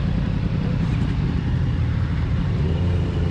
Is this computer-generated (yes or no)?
yes